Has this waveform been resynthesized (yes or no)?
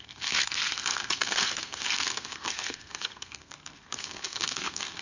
yes